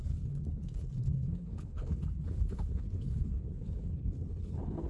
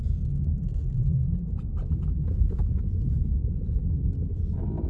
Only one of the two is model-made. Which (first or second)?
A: first